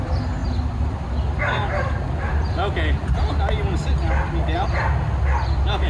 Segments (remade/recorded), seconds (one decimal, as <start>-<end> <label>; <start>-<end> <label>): 0.0-5.9 recorded